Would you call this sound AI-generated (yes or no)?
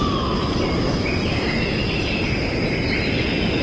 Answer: no